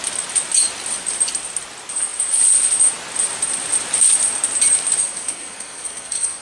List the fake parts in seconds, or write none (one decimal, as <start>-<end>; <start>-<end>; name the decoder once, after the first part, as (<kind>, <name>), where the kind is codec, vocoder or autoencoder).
5.0-6.4 (codec, SNAC)

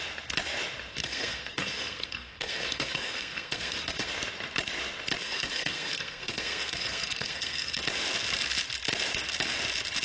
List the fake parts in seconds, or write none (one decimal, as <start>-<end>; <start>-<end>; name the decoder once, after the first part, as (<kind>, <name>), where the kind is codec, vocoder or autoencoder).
0.9-4.1 (codec, SNAC); 5.2-7.8

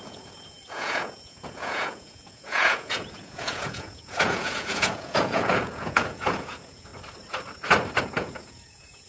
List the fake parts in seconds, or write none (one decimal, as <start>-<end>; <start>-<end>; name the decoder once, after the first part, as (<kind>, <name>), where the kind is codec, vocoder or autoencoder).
0.0-6.9 (vocoder, Vocos); 8.0-9.1